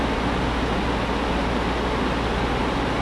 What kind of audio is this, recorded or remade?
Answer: recorded